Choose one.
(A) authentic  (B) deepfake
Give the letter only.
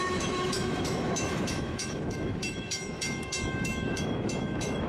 B